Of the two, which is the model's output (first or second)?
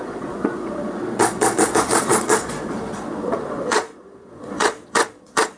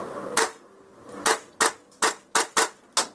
first